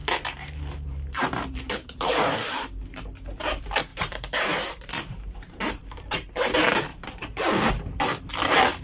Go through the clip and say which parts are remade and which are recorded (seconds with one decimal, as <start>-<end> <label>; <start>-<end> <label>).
0.0-3.4 remade; 3.4-3.9 recorded; 3.9-5.7 remade; 5.7-6.9 recorded; 6.9-7.7 remade; 7.7-8.8 recorded